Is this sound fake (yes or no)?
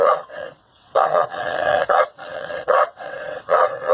yes